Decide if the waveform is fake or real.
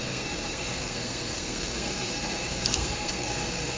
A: fake